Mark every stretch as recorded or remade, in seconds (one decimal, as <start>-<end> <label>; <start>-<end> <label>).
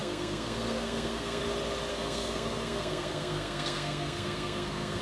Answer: 0.0-1.4 remade; 1.4-1.9 recorded; 1.9-5.0 remade